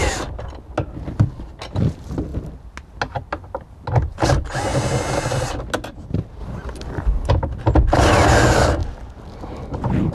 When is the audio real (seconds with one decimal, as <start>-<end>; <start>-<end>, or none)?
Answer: 0.0-10.1